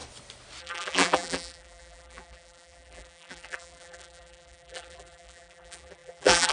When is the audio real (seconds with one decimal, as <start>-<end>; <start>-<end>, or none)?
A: 0.0-0.6